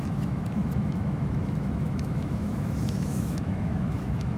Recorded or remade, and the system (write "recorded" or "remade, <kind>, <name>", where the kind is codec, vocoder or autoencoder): remade, autoencoder, DAC-VAE